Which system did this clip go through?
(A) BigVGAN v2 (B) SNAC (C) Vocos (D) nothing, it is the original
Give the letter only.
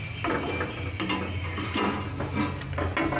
D